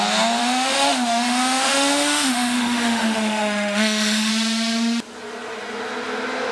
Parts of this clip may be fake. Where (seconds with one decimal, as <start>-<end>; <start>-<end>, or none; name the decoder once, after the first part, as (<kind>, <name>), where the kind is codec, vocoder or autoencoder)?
0.4-4.3 (autoencoder, DAC-VAE)